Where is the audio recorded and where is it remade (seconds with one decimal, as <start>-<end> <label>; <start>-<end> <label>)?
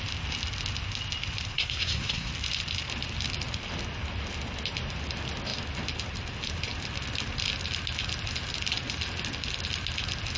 0.0-1.5 recorded; 1.5-2.3 remade; 2.3-10.4 recorded